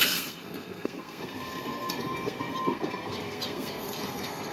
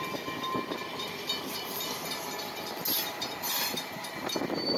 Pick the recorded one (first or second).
second